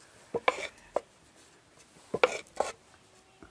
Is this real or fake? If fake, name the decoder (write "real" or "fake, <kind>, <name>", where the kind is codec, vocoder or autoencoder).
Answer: real